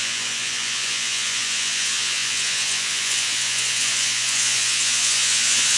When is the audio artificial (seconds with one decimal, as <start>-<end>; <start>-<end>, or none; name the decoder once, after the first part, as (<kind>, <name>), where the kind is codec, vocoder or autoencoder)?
0.0-5.8 (vocoder, Vocos)